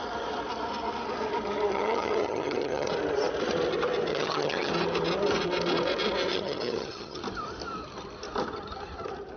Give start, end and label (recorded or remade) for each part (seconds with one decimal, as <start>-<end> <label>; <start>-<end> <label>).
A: 0.0-1.7 recorded; 1.7-2.9 remade; 2.9-4.1 recorded; 4.1-4.7 remade; 4.7-6.3 recorded; 6.3-7.2 remade; 7.2-9.4 recorded